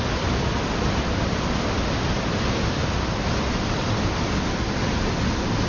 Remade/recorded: recorded